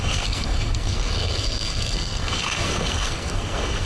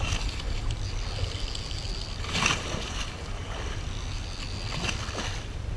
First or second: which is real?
second